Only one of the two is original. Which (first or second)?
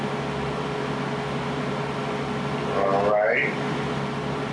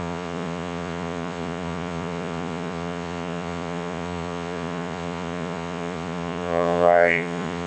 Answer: first